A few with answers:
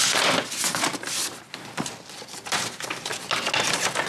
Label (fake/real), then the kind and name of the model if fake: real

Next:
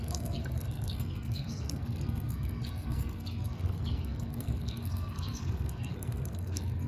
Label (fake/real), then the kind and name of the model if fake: fake, codec, SNAC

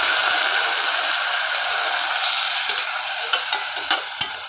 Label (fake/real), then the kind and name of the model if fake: fake, vocoder, BigVGAN v2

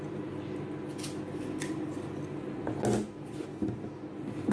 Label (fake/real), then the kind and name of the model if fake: real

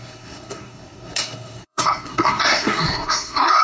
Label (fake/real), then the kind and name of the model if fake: fake, codec, SNAC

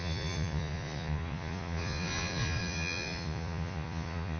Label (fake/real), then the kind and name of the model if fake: fake, vocoder, Vocos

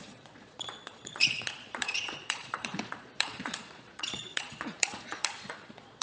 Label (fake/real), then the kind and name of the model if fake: fake, vocoder, Vocos